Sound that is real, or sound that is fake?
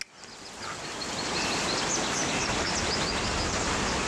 real